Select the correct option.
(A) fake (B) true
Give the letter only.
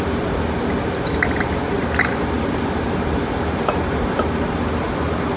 B